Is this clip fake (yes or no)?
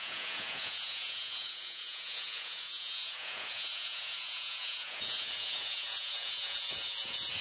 yes